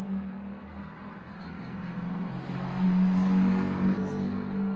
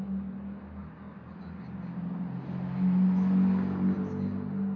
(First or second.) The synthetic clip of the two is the first